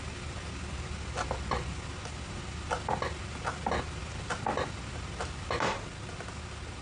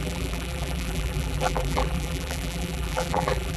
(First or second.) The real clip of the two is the first